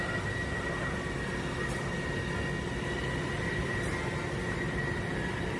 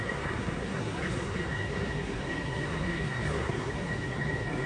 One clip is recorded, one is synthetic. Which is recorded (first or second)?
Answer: first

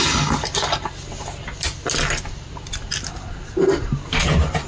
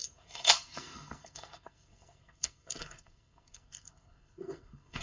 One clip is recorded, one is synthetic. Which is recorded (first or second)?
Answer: first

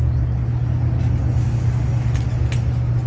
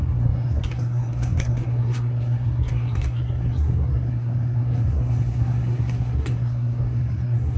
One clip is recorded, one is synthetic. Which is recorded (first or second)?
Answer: first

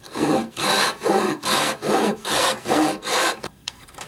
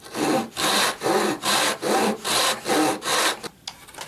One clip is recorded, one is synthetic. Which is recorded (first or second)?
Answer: second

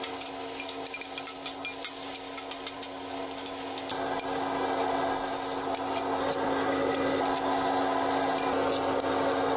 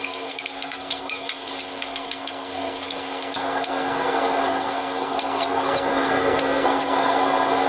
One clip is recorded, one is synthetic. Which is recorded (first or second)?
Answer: first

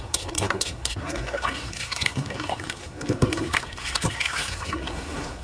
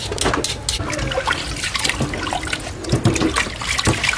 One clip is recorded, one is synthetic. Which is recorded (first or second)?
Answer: second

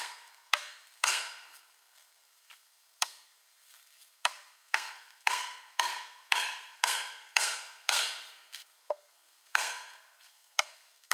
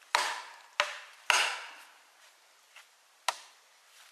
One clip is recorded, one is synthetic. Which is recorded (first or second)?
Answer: second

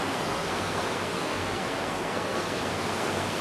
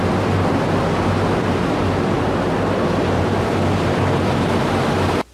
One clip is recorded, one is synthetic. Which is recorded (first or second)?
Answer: second